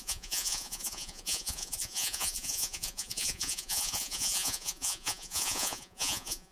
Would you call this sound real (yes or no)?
no